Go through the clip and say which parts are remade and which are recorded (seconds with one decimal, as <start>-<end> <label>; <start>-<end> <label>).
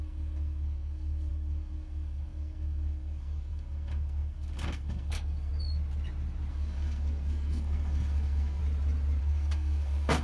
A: 0.0-5.5 remade; 5.5-6.5 recorded; 6.5-8.6 remade; 8.6-9.2 recorded; 9.2-10.2 remade